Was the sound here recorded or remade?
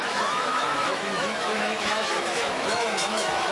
remade